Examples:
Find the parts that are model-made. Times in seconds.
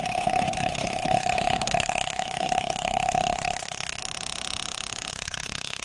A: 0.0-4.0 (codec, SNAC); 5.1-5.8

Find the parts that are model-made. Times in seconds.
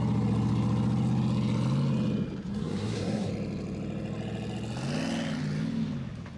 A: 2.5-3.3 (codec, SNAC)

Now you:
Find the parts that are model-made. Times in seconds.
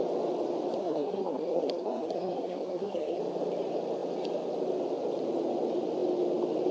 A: 0.8-3.2 (codec, SNAC)